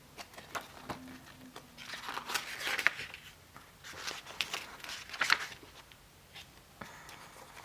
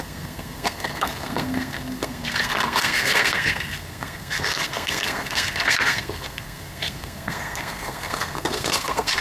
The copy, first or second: second